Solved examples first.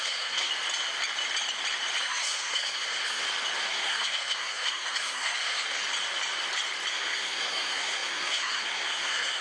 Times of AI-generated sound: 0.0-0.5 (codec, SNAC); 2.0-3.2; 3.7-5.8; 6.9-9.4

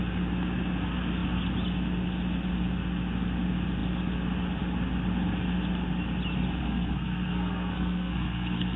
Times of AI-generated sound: 6.6-8.8 (codec, SNAC)

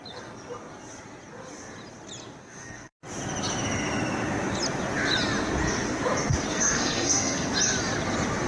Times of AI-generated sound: 2.4-3.0 (codec, SNAC); 6.5-7.5

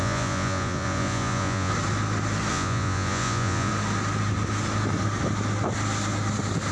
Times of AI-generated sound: 0.0-1.7 (vocoder, Vocos); 2.5-3.7

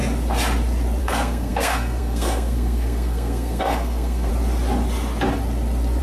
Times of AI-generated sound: 1.0-4.3 (codec, SNAC)

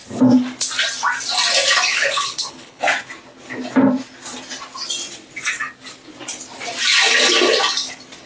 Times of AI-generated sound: 1.9-2.8 (codec, HILCodec)

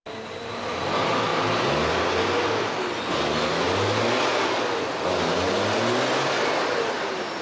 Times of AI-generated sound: none